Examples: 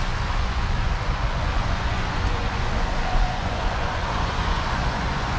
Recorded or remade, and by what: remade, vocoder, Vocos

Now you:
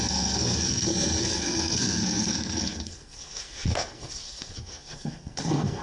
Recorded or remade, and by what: remade, codec, SNAC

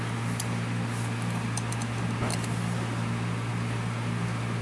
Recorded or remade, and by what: recorded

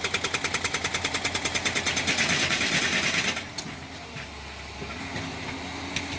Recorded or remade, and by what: recorded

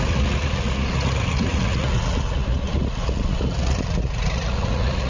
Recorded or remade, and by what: remade, vocoder, Vocos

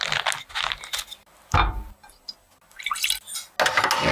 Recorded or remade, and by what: recorded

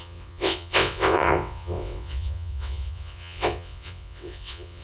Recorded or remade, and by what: remade, vocoder, WaveNeXt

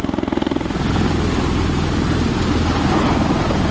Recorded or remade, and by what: recorded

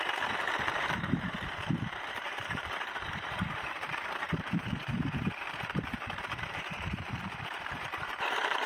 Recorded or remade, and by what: remade, vocoder, BigVGAN v2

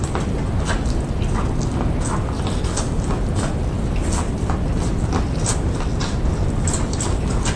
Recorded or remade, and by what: recorded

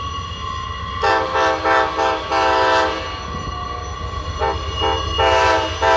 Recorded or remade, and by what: recorded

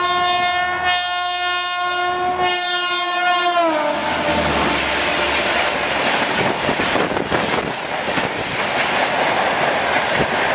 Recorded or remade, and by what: recorded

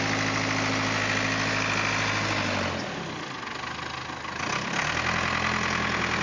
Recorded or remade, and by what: recorded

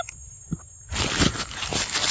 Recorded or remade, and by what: recorded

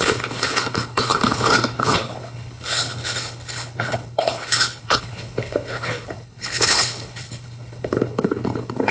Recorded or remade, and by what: remade, codec, HILCodec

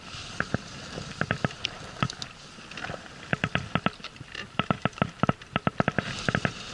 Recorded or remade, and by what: remade, vocoder, BigVGAN v2